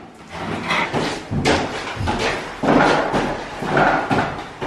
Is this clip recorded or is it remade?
recorded